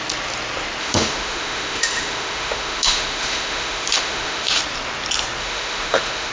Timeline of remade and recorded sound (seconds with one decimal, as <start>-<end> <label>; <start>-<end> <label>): 0.0-0.8 recorded; 0.8-4.6 remade; 4.6-5.4 recorded; 5.4-6.3 remade